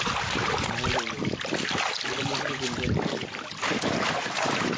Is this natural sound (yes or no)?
yes